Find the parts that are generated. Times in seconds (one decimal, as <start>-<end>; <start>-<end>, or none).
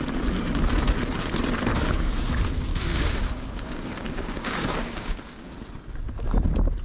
1.7-2.3; 2.7-5.5